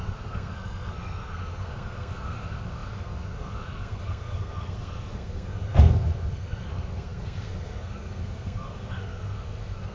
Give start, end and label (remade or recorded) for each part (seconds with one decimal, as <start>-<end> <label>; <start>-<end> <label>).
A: 0.0-9.9 remade